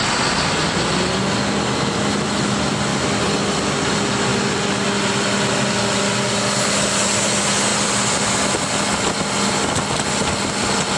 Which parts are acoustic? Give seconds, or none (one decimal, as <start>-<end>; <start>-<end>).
0.0-7.7; 8.2-11.0